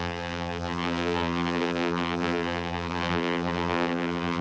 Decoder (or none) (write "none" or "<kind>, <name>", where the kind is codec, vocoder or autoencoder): vocoder, BigVGAN v2